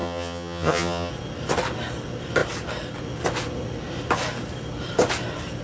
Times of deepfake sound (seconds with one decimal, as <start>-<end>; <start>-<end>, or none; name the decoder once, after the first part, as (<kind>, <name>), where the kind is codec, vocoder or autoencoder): 0.0-1.1 (vocoder, HiFi-GAN)